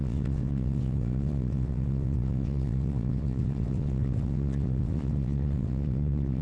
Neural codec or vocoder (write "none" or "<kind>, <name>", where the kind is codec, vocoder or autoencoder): vocoder, WaveNeXt